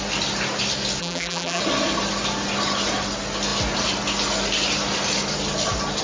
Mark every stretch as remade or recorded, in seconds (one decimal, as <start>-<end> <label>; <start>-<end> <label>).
0.0-1.0 recorded; 1.0-1.6 remade; 1.6-6.0 recorded